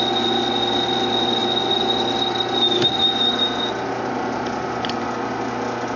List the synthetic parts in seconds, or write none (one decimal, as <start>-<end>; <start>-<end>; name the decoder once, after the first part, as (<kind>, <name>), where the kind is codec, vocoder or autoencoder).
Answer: none